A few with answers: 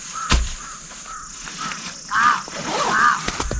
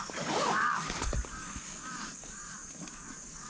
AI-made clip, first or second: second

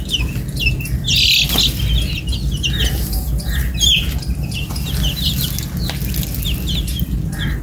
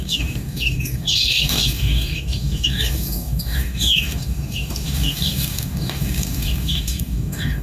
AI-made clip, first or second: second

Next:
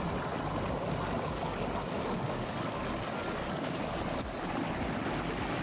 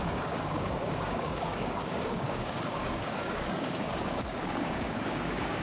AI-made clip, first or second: second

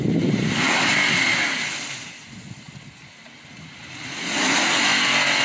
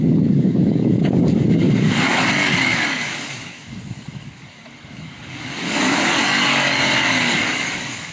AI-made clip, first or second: second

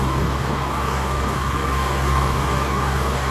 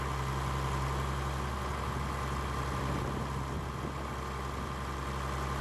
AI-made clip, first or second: first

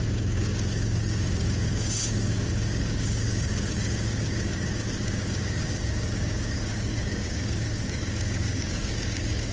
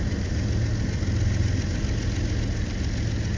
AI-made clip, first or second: first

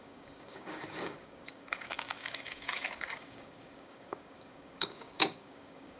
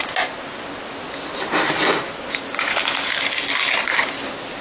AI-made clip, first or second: first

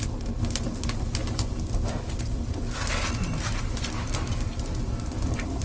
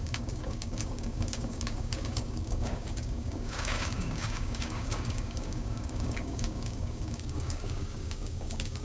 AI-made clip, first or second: second